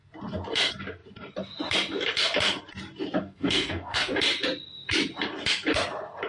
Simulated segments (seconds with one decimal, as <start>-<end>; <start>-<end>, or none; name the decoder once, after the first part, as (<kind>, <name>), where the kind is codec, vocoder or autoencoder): 3.2-4.1 (codec, SNAC)